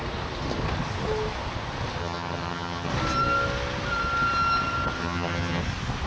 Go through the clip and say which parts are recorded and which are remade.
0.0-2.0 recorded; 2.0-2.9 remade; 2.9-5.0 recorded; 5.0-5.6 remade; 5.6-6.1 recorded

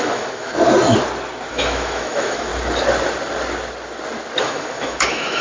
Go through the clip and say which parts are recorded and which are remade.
0.0-0.5 remade; 0.5-1.5 recorded; 1.5-2.5 remade; 2.5-4.4 recorded; 4.4-5.4 remade

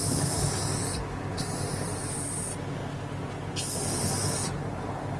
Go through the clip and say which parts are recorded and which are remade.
0.0-5.2 recorded

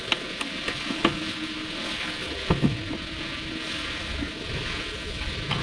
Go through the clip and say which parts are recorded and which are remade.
0.0-5.6 recorded

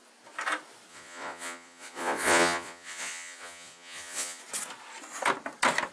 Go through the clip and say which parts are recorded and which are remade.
0.0-0.9 recorded; 0.9-4.4 remade; 4.4-5.9 recorded

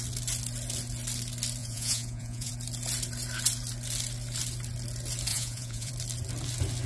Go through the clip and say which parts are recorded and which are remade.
0.0-1.6 recorded; 1.6-2.5 remade; 2.5-5.3 recorded; 5.3-5.9 remade; 5.9-6.9 recorded

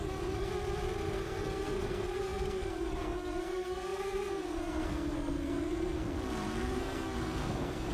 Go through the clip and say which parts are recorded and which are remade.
0.0-0.5 remade; 0.5-1.1 recorded; 1.1-7.9 remade